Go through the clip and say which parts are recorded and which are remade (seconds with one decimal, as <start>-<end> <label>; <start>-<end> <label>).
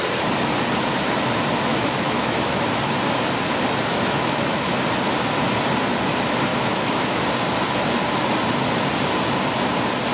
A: 0.0-1.7 recorded; 1.7-2.6 remade; 2.6-3.9 recorded; 3.9-4.7 remade; 4.7-6.5 recorded; 6.5-7.2 remade; 7.2-10.1 recorded